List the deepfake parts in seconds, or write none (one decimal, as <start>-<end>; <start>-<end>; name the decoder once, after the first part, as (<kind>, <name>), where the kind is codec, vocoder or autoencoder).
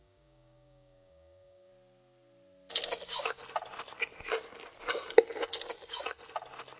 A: 0.0-1.7 (codec, DAC); 3.0-3.4